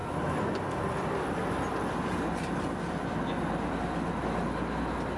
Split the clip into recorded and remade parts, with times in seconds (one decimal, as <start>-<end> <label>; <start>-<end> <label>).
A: 0.0-5.2 recorded